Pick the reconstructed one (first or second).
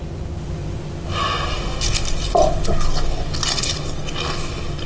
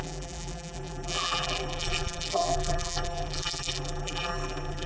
second